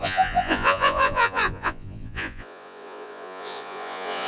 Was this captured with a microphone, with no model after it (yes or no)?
no